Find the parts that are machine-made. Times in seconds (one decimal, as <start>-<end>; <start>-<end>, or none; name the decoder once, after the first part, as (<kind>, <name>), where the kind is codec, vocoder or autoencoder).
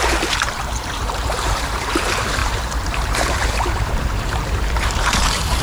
0.0-5.6 (vocoder, BigVGAN v2)